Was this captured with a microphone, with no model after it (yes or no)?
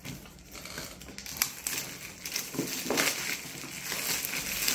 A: yes